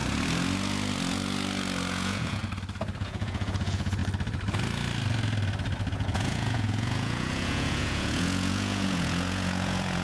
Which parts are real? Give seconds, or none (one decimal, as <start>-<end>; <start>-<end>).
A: 0.0-1.9; 2.4-3.0; 4.0-5.9